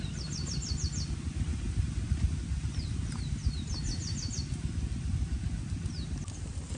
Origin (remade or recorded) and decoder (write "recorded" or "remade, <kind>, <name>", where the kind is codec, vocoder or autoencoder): recorded